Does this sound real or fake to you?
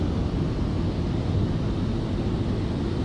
real